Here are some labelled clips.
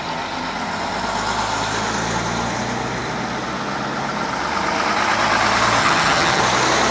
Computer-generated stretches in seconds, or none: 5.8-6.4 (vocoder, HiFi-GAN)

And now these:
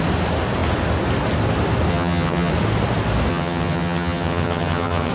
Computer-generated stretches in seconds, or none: 1.9-2.5 (vocoder, HiFi-GAN); 3.3-5.1

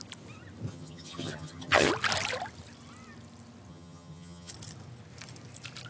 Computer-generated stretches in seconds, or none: 0.7-1.9 (vocoder, HiFi-GAN); 3.7-4.5

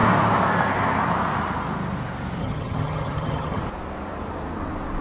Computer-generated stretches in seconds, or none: 2.4-3.6 (vocoder, HiFi-GAN)

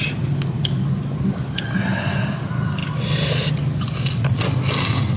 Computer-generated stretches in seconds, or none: none

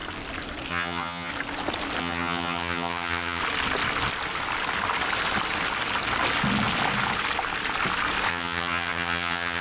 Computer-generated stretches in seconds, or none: 0.7-1.3 (vocoder, HiFi-GAN); 2.0-3.4; 8.3-9.6

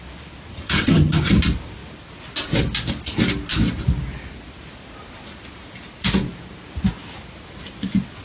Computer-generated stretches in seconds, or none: 0.5-1.3 (vocoder, HiFi-GAN)

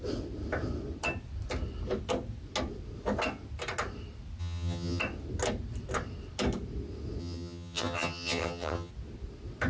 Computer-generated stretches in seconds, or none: 4.4-5.0 (vocoder, HiFi-GAN); 7.2-8.9